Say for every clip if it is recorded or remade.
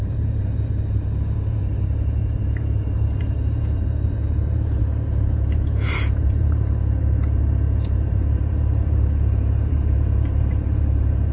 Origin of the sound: remade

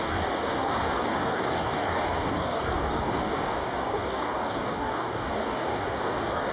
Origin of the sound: remade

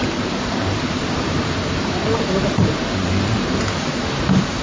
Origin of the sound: recorded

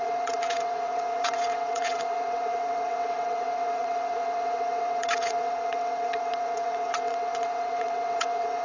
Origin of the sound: remade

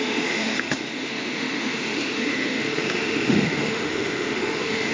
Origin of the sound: remade